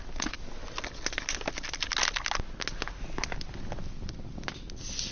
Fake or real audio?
real